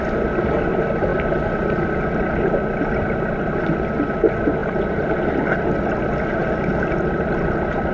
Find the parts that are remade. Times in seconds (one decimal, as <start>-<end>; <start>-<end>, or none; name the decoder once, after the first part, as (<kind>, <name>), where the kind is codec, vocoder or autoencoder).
4.6-5.2 (vocoder, BigVGAN v2); 6.4-6.9